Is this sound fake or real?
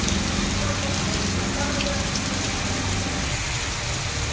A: real